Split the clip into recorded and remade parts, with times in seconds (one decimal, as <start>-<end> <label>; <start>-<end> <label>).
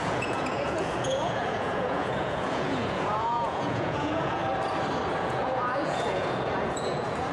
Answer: 0.0-4.4 remade; 4.4-5.2 recorded; 5.2-7.3 remade